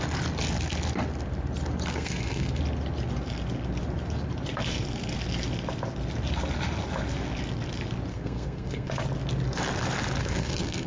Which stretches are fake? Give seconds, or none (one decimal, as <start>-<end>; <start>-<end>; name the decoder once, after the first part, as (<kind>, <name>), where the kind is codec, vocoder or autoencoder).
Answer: 1.9-2.6 (codec, SNAC); 8.1-8.9; 10.2-10.9